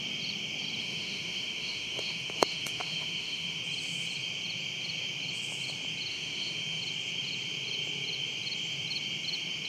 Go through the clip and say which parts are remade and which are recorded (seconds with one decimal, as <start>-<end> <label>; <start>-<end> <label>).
0.0-0.8 recorded; 0.8-3.6 remade; 3.6-6.1 recorded; 6.1-6.8 remade; 6.8-9.7 recorded